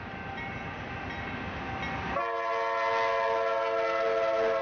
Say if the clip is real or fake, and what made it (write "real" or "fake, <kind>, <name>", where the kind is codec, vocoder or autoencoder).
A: real